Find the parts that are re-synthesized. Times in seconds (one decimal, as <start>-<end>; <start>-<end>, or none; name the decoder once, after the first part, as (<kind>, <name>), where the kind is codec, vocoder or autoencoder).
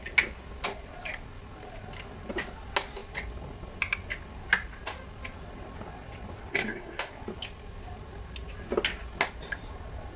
6.5-7.1 (codec, SNAC)